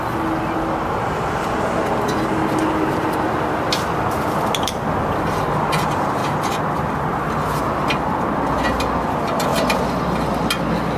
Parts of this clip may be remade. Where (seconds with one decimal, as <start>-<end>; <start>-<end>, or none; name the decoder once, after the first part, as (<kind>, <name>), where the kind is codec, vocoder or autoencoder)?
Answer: none